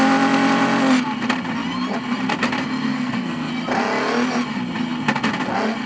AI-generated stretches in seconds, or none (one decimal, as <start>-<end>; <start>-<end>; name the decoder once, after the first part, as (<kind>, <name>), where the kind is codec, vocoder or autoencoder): 2.9-3.5 (codec, SNAC)